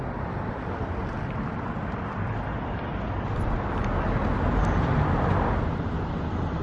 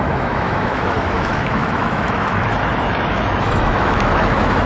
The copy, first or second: second